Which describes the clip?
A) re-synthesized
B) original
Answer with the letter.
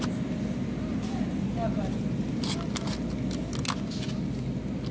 B